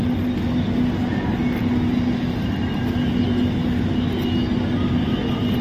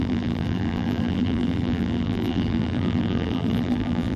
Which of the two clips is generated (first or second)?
second